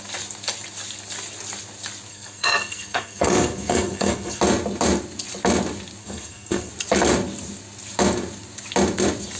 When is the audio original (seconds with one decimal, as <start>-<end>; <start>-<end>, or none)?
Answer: 0.0-2.1; 4.4-6.0; 6.7-9.4